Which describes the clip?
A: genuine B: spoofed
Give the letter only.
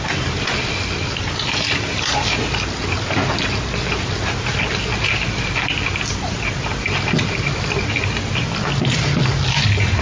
A